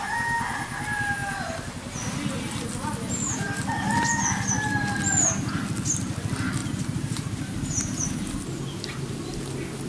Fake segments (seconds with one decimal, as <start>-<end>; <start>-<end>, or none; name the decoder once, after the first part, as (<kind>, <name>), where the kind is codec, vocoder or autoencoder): 6.6-8.1 (vocoder, BigVGAN v2)

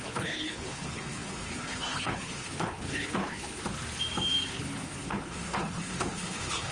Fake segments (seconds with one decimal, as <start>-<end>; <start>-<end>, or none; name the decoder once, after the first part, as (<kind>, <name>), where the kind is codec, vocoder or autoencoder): 0.0-3.6 (codec, HILCodec); 4.5-6.7